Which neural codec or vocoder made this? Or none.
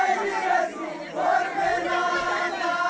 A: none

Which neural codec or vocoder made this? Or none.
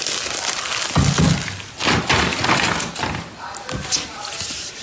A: none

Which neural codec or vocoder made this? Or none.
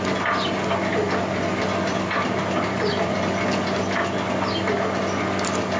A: none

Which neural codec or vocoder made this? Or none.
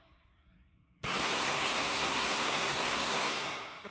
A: codec, SNAC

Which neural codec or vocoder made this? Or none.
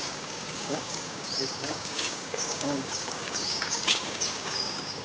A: codec, DAC